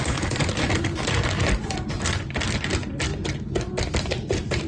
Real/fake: real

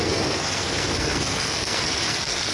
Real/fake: fake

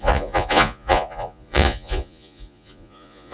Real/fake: fake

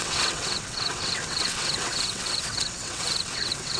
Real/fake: fake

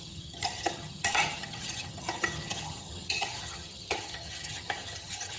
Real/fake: fake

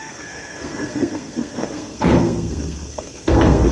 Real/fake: fake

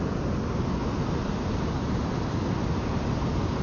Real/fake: real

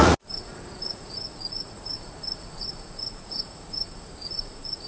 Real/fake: fake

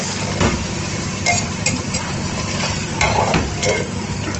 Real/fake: fake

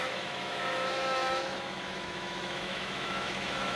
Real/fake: fake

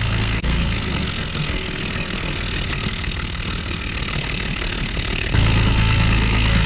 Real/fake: fake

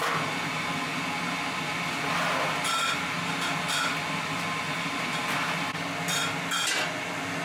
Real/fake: real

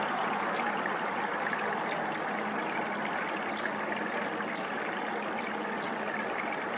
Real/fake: real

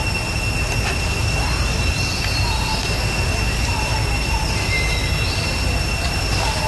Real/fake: real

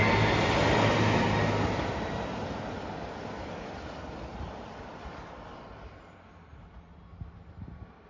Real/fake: real